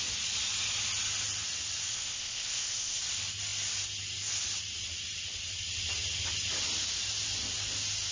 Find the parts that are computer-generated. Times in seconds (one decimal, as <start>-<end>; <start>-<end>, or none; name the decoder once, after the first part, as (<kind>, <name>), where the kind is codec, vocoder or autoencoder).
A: 1.9-3.0 (codec, ZipCodec)